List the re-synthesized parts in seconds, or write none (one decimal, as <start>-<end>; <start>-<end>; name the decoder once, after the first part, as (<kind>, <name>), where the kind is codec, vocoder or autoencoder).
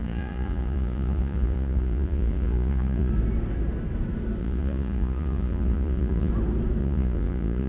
0.0-3.1 (vocoder, Vocos); 4.4-6.3; 6.8-7.7